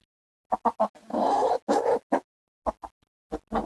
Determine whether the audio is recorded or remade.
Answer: recorded